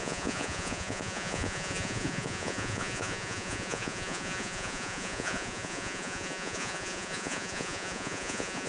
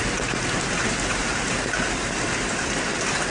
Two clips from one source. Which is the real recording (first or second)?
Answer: second